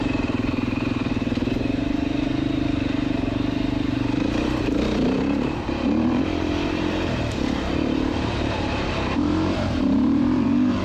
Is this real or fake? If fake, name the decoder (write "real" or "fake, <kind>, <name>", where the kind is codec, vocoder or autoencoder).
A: fake, vocoder, BigVGAN v2